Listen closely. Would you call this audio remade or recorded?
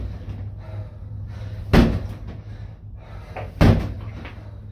recorded